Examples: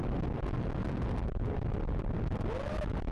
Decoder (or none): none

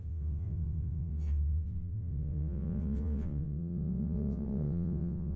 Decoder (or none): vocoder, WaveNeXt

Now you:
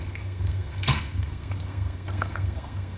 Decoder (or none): codec, SNAC